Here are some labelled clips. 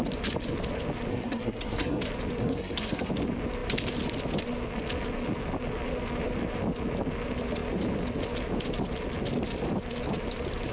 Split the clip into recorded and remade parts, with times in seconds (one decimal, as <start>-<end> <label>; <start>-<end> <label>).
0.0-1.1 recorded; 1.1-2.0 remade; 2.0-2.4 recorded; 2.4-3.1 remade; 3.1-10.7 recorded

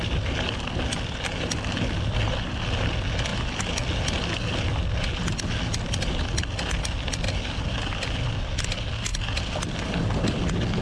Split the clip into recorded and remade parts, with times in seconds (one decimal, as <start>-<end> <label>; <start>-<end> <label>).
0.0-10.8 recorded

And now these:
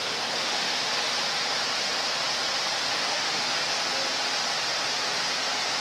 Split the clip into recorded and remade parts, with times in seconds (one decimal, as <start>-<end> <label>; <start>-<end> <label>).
0.0-0.9 remade; 0.9-2.8 recorded; 2.8-3.5 remade; 3.5-5.8 recorded

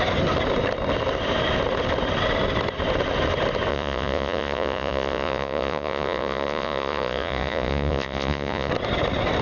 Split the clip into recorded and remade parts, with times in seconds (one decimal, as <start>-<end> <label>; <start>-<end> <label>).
0.0-3.7 recorded; 3.7-8.7 remade; 8.7-9.4 recorded

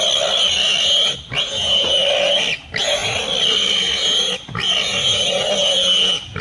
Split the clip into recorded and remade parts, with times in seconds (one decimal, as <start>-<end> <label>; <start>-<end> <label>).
0.0-6.4 recorded

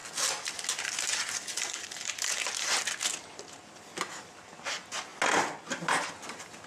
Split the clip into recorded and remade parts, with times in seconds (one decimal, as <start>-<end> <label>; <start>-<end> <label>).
0.0-6.7 recorded